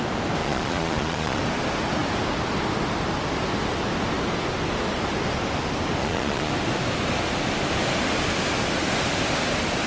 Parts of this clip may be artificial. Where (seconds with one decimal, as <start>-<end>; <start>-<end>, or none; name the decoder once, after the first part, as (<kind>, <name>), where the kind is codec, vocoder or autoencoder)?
0.4-1.4 (vocoder, Vocos); 6.0-6.5